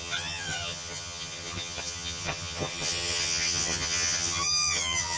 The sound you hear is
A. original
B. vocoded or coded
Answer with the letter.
B